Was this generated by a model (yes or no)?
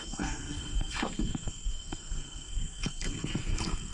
yes